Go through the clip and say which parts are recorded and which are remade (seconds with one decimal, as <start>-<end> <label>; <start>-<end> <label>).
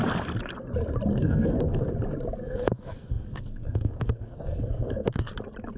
0.0-1.1 recorded; 1.1-1.9 remade; 1.9-2.4 recorded; 2.4-5.3 remade; 5.3-5.8 recorded